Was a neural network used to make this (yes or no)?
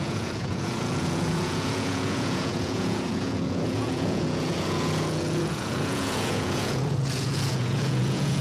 yes